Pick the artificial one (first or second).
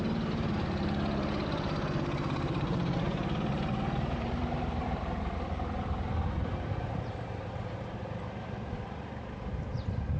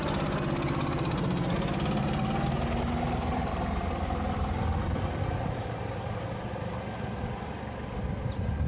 first